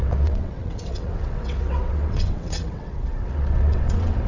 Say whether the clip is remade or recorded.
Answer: remade